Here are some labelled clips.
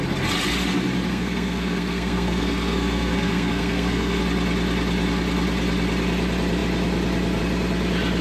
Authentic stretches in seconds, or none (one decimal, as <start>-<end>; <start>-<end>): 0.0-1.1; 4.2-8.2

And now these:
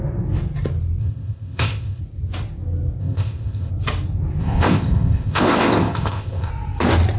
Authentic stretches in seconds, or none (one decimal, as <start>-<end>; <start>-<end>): 0.0-1.0; 2.0-3.0; 3.7-4.4; 6.5-7.2

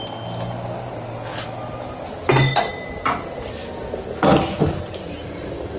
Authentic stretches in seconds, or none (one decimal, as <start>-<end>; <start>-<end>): 0.0-5.8

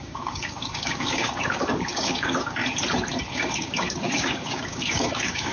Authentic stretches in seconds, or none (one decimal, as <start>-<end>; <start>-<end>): 2.6-3.3